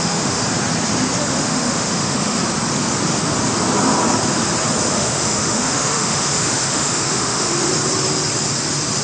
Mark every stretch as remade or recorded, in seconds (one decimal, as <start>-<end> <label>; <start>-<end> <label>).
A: 0.0-0.4 remade; 0.4-1.3 recorded; 1.3-2.4 remade; 2.4-4.9 recorded; 4.9-7.7 remade; 7.7-9.0 recorded